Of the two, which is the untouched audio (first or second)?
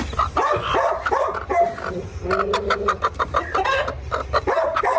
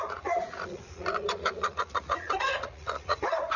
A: first